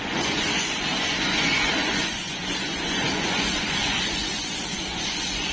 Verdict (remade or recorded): remade